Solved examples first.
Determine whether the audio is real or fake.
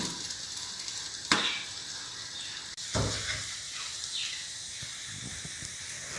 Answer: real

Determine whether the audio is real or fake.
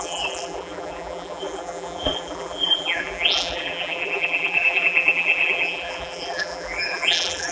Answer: fake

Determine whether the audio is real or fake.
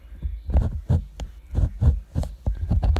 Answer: real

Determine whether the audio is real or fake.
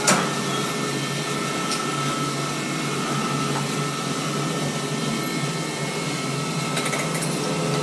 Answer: real